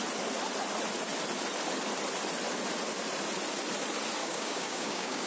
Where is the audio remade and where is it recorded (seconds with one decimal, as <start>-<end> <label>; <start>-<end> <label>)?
0.0-4.2 recorded; 4.2-5.3 remade